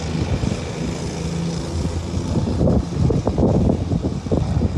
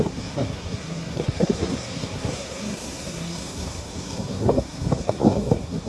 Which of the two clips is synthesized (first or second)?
second